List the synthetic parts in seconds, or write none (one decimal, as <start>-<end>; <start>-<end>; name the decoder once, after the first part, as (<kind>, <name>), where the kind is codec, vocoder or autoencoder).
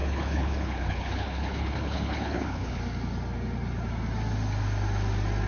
0.0-2.8 (codec, HILCodec)